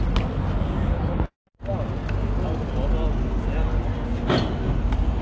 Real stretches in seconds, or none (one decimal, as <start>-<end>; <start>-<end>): 0.0-5.2